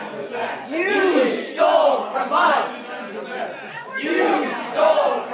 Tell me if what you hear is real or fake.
fake